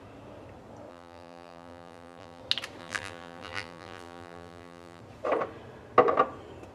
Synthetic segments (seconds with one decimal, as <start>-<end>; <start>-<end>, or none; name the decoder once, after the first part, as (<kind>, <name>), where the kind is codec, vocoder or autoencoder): 0.9-2.4 (vocoder, BigVGAN v2); 2.8-5.0